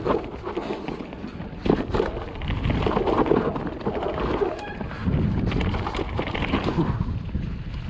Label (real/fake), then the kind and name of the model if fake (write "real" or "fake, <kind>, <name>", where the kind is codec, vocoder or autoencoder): real